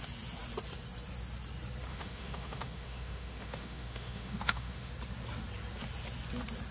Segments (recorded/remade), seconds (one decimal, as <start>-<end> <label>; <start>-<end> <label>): 0.0-1.9 recorded; 1.9-4.9 remade; 4.9-6.7 recorded